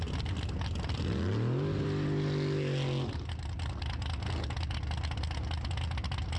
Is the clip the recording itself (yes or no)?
yes